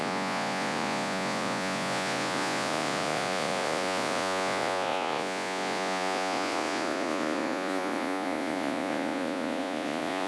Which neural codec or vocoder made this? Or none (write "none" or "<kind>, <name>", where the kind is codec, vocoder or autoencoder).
vocoder, Vocos